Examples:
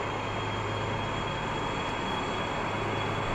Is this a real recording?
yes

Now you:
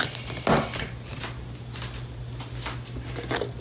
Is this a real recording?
yes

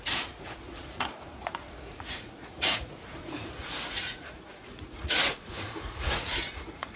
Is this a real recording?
no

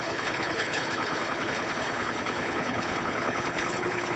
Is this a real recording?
no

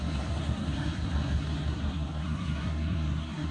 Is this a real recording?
no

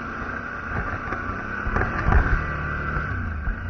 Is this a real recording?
yes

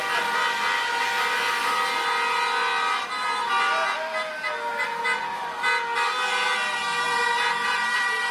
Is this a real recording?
yes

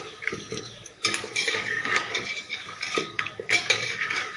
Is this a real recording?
no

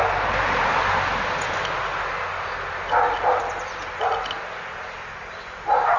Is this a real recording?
yes